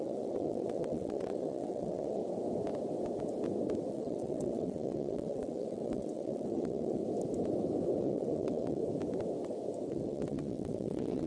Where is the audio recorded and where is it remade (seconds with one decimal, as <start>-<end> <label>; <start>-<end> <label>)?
0.0-2.2 remade; 2.2-3.9 recorded; 3.9-7.0 remade; 7.0-8.0 recorded; 8.0-8.8 remade; 8.8-9.9 recorded; 9.9-11.3 remade